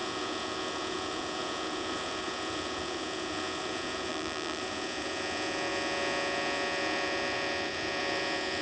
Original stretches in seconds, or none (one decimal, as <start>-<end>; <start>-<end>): 4.1-4.6